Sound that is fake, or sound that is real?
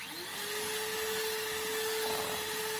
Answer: real